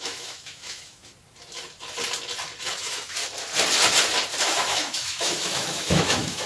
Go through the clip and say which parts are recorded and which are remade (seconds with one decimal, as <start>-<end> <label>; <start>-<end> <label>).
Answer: 0.0-1.1 remade; 1.1-2.7 recorded; 2.7-3.2 remade; 3.2-4.4 recorded; 4.4-6.5 remade